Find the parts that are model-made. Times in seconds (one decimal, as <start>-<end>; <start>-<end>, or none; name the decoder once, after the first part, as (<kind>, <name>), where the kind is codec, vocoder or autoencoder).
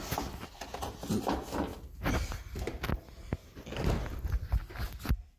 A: none